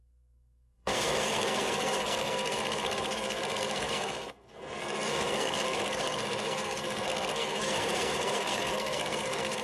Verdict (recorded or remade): remade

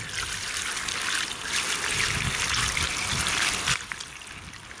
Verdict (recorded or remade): recorded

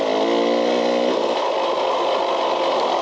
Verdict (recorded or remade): recorded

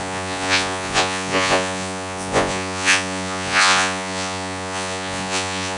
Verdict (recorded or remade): remade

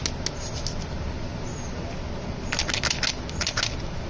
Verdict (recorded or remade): recorded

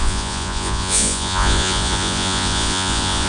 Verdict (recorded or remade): remade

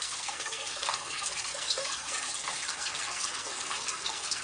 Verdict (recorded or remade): remade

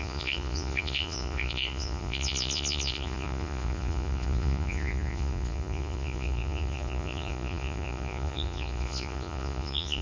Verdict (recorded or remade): remade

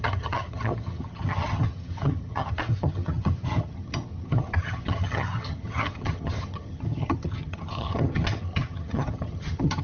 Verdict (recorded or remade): remade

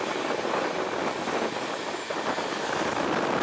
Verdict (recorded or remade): recorded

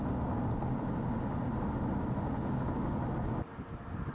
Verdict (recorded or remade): recorded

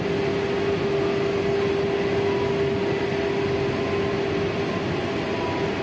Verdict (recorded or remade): recorded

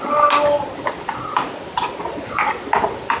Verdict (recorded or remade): recorded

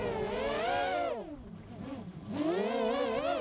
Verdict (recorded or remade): recorded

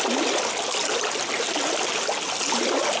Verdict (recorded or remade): recorded